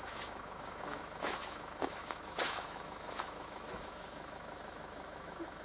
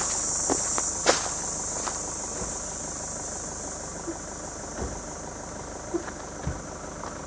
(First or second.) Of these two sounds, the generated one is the first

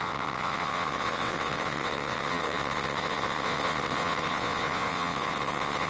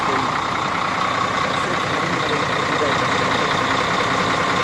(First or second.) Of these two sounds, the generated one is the first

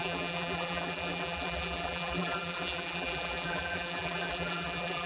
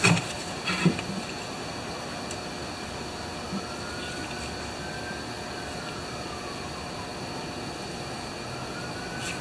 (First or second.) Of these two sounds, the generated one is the first